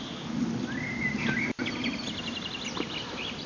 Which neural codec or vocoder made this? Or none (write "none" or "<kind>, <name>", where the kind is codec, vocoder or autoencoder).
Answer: none